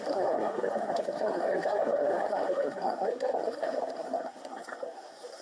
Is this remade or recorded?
remade